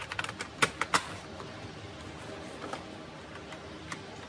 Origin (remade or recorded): recorded